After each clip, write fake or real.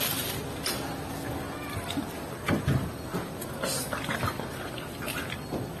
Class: real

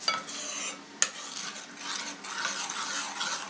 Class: real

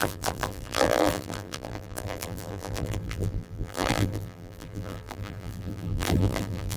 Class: fake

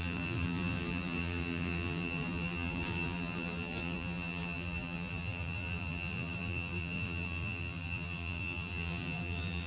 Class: fake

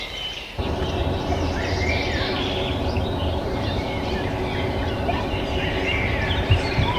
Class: fake